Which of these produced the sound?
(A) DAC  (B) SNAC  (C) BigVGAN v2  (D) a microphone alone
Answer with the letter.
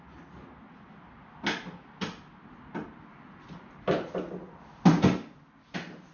D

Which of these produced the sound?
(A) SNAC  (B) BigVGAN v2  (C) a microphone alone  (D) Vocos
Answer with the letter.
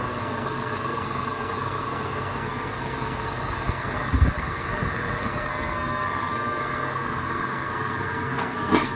A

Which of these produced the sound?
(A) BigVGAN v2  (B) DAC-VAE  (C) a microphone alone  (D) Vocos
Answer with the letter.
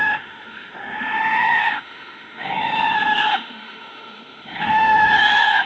B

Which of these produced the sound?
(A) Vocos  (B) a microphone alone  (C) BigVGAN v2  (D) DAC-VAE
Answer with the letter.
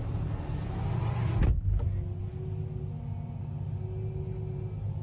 B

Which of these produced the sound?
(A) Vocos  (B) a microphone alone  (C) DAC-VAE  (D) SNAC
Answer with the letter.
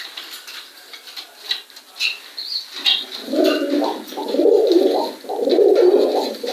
B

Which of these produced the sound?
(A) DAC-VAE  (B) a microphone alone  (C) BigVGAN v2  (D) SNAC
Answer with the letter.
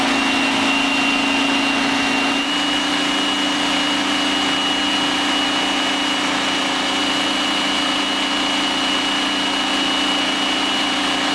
B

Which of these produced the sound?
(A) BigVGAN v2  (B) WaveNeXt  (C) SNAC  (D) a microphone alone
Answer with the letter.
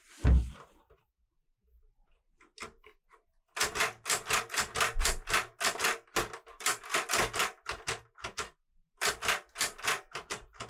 D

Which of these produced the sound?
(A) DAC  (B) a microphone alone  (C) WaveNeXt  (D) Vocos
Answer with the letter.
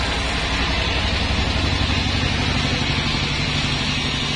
B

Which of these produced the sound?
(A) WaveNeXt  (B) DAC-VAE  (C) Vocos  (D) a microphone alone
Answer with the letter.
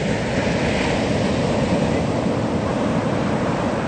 D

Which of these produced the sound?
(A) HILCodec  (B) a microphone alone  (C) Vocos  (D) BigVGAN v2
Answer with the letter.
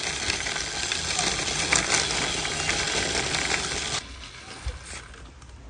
B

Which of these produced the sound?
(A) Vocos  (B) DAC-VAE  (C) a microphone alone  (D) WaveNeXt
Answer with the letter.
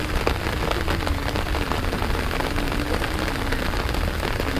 C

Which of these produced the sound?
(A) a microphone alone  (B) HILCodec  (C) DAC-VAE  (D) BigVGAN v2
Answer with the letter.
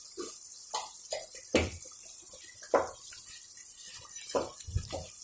D